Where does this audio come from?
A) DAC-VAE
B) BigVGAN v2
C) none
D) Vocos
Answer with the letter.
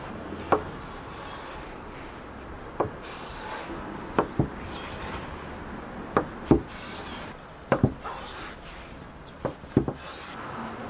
C